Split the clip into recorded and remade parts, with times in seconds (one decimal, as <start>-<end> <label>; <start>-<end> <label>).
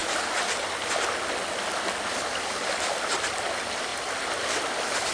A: 0.0-5.1 recorded